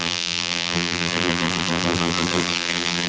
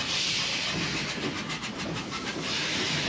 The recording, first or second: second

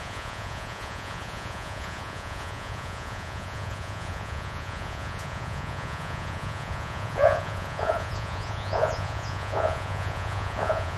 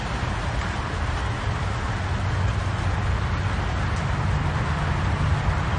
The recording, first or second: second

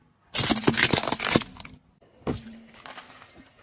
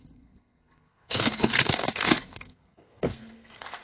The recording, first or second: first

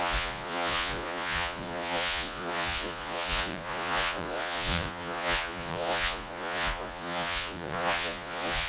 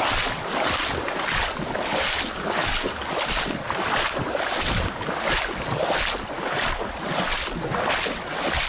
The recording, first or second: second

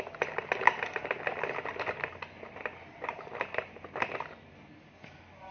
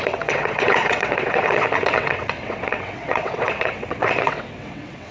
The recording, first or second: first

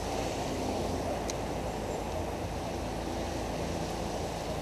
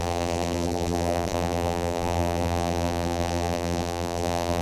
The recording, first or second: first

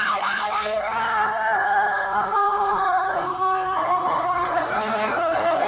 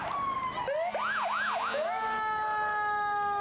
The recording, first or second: second